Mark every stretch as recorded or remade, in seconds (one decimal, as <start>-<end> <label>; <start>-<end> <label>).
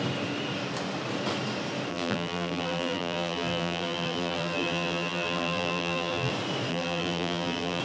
0.0-1.9 recorded; 1.9-6.3 remade; 6.3-6.7 recorded; 6.7-7.8 remade